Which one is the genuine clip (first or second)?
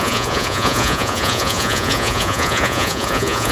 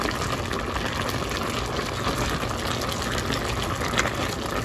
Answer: second